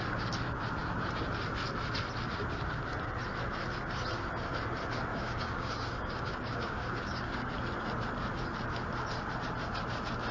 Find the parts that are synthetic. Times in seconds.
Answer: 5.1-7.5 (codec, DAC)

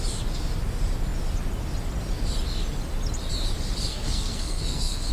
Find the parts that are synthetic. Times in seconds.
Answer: 3.9-5.1 (codec, SNAC)

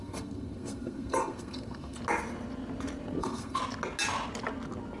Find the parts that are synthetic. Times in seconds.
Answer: 0.0-2.0 (codec, SNAC); 3.2-3.6

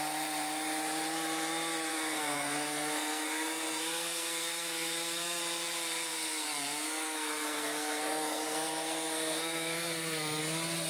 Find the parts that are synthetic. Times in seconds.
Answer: 1.9-5.4 (codec, SNAC); 6.1-10.4